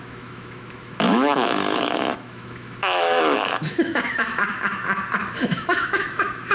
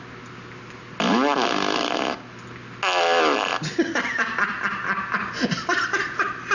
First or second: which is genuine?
second